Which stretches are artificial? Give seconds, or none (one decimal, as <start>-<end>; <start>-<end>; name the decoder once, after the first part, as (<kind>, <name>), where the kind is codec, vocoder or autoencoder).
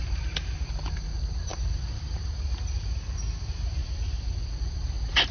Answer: 3.8-4.7 (vocoder, BigVGAN v2)